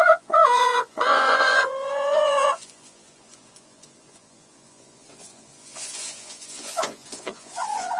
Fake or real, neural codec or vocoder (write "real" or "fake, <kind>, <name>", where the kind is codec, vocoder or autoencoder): fake, vocoder, Vocos